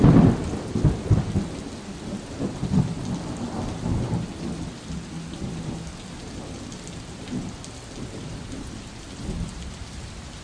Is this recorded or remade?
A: recorded